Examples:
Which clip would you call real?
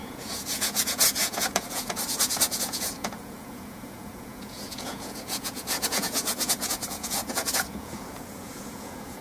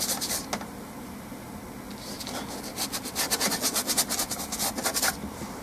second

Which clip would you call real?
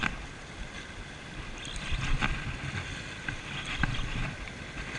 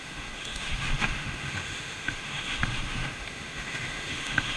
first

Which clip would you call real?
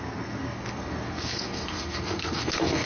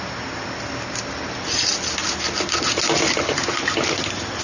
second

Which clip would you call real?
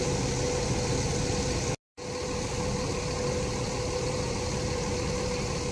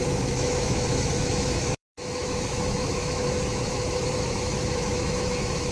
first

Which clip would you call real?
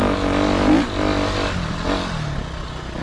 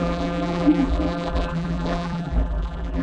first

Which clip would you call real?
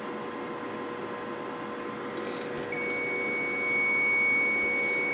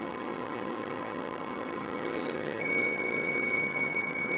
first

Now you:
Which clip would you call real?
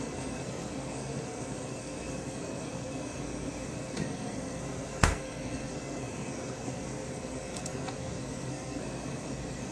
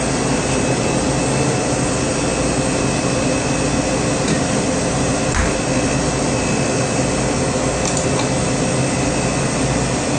second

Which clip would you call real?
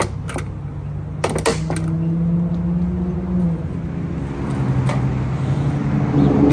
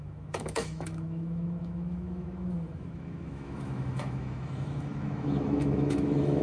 first